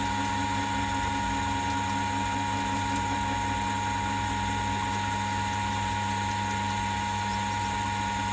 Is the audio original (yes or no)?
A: yes